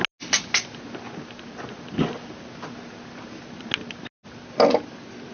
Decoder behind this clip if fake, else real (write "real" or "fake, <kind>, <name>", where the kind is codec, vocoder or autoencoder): real